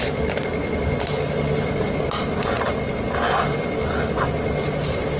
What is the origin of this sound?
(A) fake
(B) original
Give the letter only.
B